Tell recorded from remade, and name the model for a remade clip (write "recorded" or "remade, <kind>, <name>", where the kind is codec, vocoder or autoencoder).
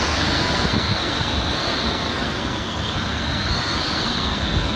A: remade, codec, SNAC